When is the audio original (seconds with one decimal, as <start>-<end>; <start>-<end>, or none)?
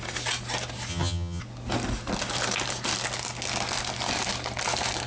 0.0-0.9; 1.4-5.1